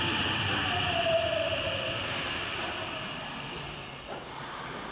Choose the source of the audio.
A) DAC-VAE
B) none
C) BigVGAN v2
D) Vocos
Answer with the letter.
C